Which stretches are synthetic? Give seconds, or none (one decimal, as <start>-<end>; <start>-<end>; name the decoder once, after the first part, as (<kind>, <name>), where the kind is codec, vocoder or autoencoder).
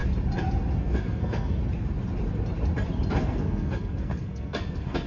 0.8-1.6 (codec, SNAC); 3.2-5.1